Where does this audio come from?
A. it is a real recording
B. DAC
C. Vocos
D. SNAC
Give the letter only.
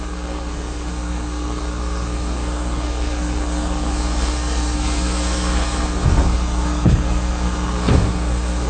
D